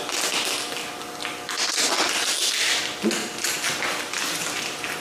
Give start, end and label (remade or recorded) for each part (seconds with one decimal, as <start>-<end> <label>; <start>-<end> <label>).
0.0-5.0 recorded